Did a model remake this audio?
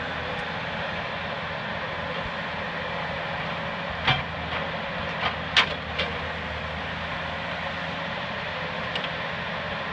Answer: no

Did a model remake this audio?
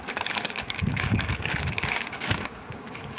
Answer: yes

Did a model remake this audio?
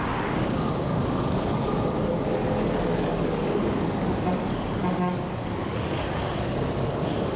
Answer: yes